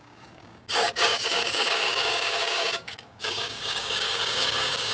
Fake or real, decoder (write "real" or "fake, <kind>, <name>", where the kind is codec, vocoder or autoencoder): fake, codec, DAC